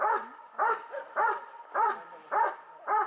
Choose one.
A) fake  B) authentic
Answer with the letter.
A